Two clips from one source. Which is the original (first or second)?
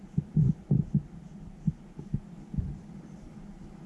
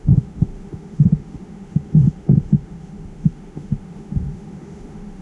first